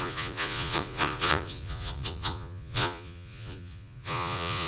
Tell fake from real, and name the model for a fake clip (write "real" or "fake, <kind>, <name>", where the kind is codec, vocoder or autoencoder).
fake, vocoder, Vocos